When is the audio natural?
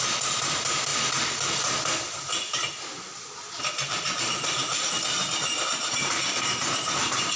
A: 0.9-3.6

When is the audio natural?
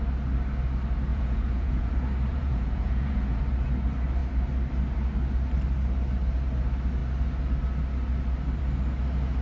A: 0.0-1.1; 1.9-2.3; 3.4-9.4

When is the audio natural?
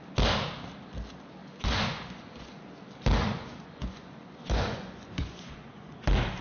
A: 0.0-1.4; 2.6-3.2; 6.0-6.4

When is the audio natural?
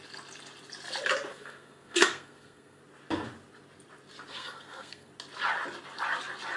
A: 0.0-1.3; 2.8-4.3; 5.1-6.6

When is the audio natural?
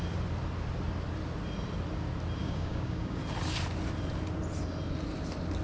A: 0.0-2.4; 3.2-5.6